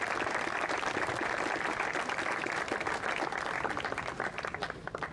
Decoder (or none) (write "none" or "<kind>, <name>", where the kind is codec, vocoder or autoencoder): none